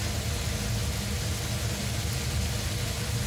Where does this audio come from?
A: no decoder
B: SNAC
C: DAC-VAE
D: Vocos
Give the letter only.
A